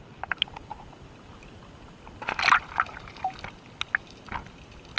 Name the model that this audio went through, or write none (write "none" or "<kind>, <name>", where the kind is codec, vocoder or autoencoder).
none